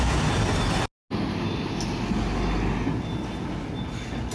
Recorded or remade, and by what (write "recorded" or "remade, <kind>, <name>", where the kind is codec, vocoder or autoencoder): recorded